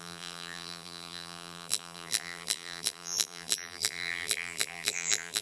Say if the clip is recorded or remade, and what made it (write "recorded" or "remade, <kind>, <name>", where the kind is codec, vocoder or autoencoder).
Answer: remade, vocoder, BigVGAN v2